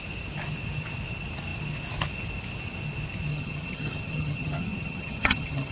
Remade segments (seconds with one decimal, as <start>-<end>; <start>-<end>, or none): 3.3-5.7